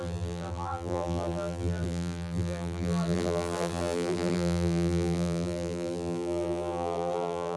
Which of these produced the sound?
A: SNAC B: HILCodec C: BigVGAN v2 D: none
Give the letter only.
C